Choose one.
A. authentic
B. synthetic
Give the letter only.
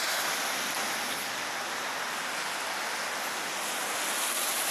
A